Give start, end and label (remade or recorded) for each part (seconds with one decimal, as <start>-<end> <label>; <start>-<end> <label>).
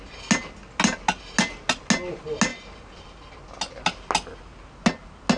0.0-5.4 recorded